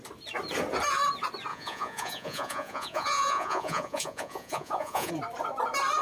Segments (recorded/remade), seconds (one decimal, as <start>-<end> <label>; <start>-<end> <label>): 0.0-1.5 recorded; 1.5-5.1 remade; 5.1-6.0 recorded